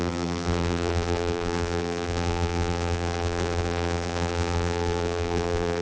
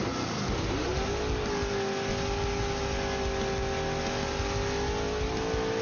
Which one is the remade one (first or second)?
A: first